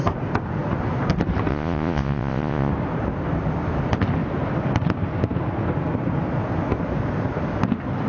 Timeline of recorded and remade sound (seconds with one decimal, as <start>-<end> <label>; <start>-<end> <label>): 0.0-1.5 recorded; 1.5-2.7 remade; 2.7-8.1 recorded

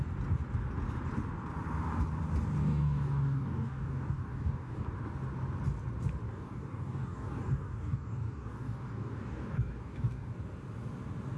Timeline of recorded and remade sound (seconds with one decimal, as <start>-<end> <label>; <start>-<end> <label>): 0.0-2.6 recorded; 2.6-4.9 remade; 4.9-6.3 recorded; 6.3-10.3 remade; 10.3-11.4 recorded